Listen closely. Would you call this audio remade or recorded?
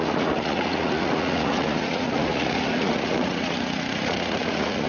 remade